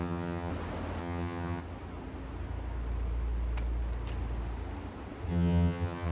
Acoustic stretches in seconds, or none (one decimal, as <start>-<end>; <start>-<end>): 0.5-1.0; 1.6-5.3